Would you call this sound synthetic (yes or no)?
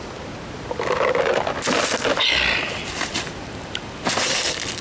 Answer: no